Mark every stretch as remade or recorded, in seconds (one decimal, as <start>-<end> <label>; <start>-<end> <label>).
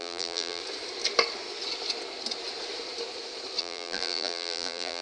0.0-0.6 remade; 0.6-3.6 recorded; 3.6-5.0 remade